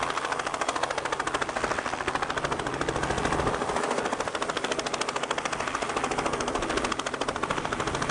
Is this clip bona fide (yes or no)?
yes